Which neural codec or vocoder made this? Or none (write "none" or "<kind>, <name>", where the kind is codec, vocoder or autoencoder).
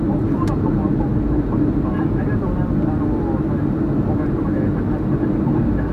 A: none